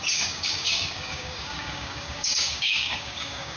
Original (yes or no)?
no